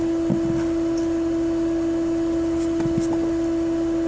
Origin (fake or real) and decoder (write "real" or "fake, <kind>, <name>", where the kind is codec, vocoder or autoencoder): real